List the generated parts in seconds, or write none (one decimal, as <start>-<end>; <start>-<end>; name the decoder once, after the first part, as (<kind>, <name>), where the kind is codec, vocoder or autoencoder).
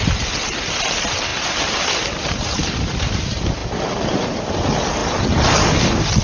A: 0.0-5.0 (vocoder, BigVGAN v2)